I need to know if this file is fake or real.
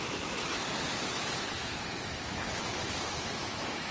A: fake